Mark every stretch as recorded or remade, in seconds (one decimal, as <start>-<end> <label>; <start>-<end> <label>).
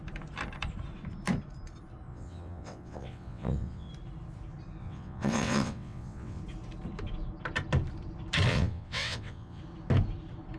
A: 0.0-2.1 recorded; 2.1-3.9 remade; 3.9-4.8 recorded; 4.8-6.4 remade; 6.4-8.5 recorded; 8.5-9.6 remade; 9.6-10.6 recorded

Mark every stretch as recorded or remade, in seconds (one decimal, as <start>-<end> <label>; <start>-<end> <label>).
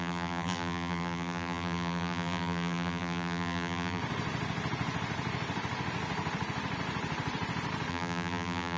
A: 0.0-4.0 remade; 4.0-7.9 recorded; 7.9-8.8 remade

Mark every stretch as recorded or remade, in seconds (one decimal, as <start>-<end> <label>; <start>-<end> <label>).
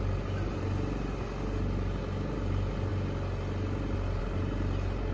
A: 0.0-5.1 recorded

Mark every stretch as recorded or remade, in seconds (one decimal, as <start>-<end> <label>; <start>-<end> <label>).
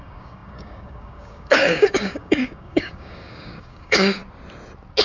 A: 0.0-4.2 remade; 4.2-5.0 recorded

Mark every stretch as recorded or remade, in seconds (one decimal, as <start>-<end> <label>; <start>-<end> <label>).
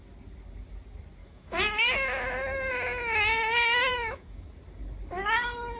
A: 0.0-1.2 recorded; 1.2-2.7 remade; 2.7-3.9 recorded; 3.9-4.5 remade; 4.5-5.8 recorded